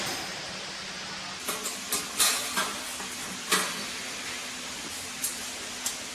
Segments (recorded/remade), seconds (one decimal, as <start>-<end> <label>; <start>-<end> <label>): 0.0-6.1 recorded